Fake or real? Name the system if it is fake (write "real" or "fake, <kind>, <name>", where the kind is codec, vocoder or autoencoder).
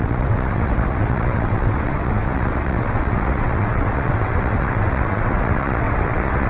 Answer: fake, vocoder, WaveNeXt